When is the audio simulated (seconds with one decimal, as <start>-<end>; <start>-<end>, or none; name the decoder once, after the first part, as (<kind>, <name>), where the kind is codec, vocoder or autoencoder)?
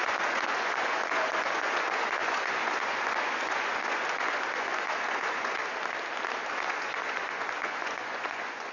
0.0-5.6 (vocoder, Vocos); 6.5-8.7